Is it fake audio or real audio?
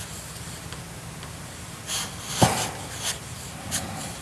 real